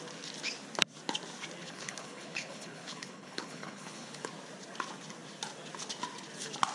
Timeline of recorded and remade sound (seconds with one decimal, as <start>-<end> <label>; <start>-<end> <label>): 0.0-1.6 recorded; 1.6-4.3 remade; 4.3-6.7 recorded